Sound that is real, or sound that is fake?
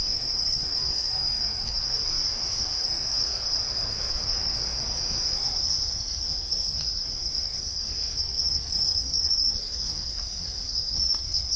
fake